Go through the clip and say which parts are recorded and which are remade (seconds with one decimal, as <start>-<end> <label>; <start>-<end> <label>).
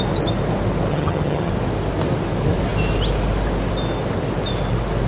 0.0-0.9 recorded; 0.9-1.5 remade; 1.5-5.1 recorded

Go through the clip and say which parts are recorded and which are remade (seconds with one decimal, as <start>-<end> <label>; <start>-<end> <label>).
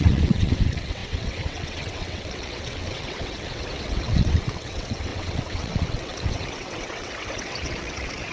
0.0-8.3 remade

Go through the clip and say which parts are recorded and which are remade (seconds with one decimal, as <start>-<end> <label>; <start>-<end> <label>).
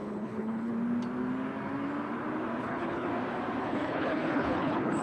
0.0-0.7 remade; 0.7-2.6 recorded; 2.6-3.1 remade; 3.1-3.6 recorded; 3.6-5.0 remade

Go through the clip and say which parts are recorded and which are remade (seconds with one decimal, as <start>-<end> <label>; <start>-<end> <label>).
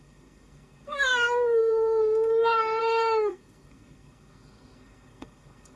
0.0-5.8 remade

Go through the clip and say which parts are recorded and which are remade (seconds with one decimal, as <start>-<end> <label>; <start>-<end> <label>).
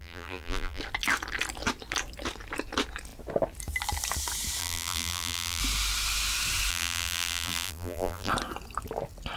0.0-0.8 remade; 0.8-4.6 recorded; 4.6-5.6 remade; 5.6-6.7 recorded; 6.7-8.3 remade; 8.3-9.4 recorded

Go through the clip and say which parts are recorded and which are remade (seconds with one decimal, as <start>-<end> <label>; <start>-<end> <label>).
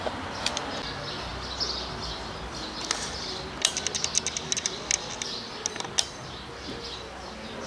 0.0-7.7 recorded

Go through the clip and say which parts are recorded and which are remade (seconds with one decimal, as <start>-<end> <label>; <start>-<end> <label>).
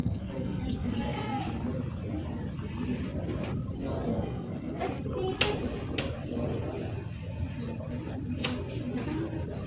0.0-1.4 remade; 1.4-4.1 recorded; 4.1-4.8 remade; 4.8-9.7 recorded